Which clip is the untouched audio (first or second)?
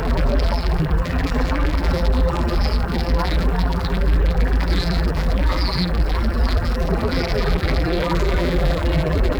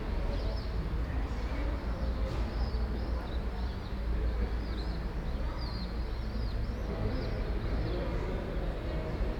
second